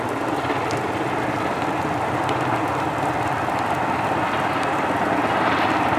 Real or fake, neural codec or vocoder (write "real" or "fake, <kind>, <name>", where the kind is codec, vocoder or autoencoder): real